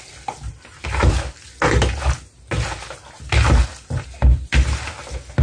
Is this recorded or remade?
recorded